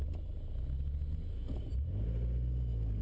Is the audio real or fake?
real